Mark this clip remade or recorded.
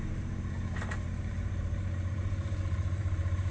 remade